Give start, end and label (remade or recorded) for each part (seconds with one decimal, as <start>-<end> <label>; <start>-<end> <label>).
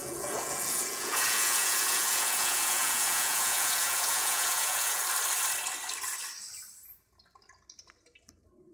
0.0-5.0 remade; 5.0-8.7 recorded